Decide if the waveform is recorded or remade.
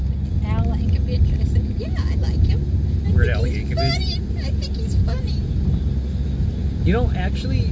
recorded